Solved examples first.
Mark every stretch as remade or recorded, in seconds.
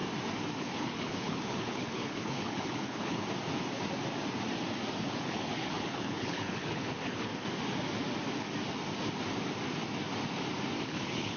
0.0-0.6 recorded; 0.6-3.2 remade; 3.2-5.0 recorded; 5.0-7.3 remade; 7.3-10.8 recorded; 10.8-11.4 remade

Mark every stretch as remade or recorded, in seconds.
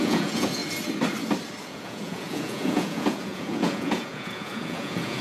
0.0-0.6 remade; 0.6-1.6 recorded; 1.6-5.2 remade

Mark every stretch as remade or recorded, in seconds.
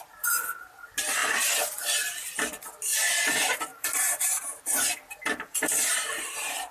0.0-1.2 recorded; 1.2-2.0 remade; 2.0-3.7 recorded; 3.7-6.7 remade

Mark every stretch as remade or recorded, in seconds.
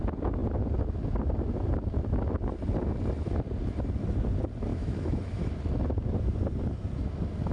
0.0-4.7 recorded; 4.7-5.5 remade; 5.5-7.5 recorded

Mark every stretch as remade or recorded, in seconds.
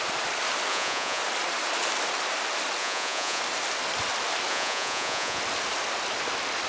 0.0-0.7 recorded; 0.7-1.2 remade; 1.2-2.8 recorded; 2.8-3.4 remade; 3.4-4.5 recorded; 4.5-5.4 remade; 5.4-6.7 recorded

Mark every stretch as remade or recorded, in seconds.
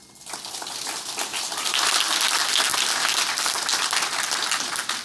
0.0-1.3 recorded; 1.3-1.9 remade; 1.9-5.0 recorded